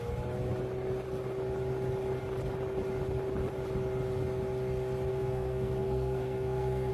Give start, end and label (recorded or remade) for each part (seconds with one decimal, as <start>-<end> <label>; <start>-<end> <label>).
0.0-5.1 recorded; 5.1-6.9 remade